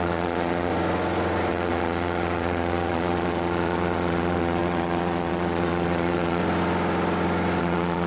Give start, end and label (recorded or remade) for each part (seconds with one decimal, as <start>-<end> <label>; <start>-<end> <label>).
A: 0.0-0.7 remade; 0.7-1.5 recorded; 1.5-6.4 remade; 6.4-7.6 recorded; 7.6-8.1 remade